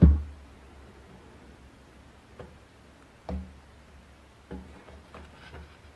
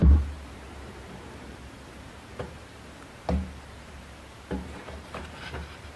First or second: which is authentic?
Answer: first